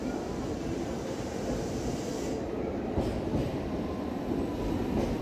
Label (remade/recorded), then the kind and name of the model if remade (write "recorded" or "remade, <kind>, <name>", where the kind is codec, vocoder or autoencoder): recorded